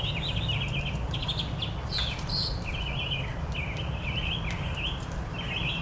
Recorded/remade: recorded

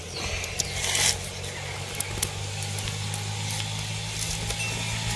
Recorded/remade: recorded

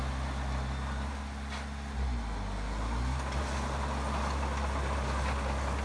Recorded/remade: recorded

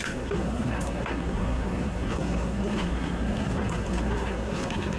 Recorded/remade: remade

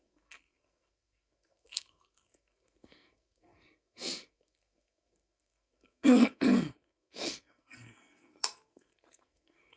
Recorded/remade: remade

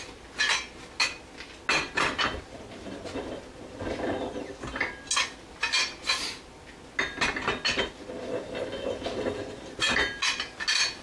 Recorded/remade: recorded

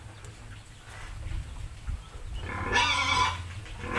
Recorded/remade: recorded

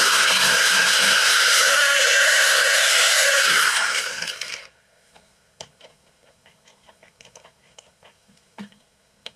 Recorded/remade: remade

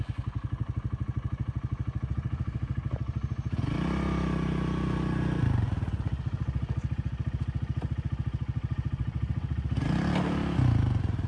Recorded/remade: recorded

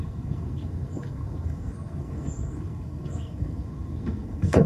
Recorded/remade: remade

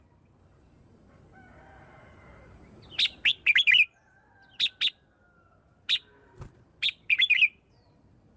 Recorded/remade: recorded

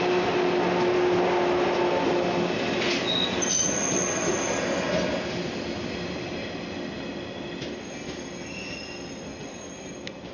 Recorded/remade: recorded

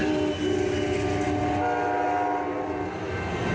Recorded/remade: recorded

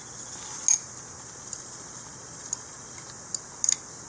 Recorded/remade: recorded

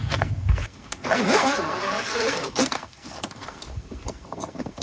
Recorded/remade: remade